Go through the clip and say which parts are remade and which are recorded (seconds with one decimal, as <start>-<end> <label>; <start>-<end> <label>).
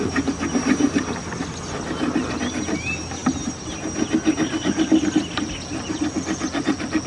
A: 0.0-7.1 recorded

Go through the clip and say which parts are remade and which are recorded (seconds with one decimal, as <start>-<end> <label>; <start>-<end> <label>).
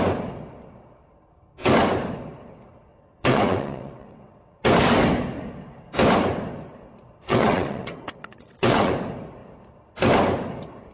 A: 0.0-2.9 recorded; 2.9-4.6 remade; 4.6-7.3 recorded; 7.3-8.9 remade; 8.9-10.9 recorded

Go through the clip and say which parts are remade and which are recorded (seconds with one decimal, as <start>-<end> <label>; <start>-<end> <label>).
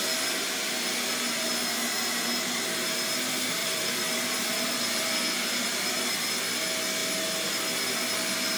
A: 0.0-3.6 recorded; 3.6-6.3 remade; 6.3-8.6 recorded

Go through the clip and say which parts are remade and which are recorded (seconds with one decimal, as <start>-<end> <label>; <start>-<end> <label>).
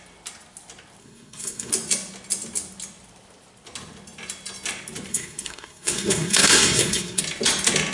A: 0.0-1.0 recorded; 1.0-1.7 remade; 1.7-5.1 recorded; 5.1-7.2 remade; 7.2-7.9 recorded